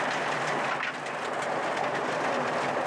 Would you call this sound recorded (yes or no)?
yes